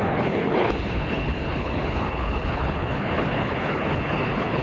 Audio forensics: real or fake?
fake